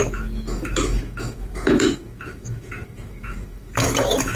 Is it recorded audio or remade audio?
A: remade